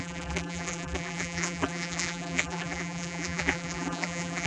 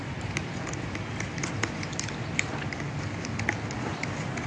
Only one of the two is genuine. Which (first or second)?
second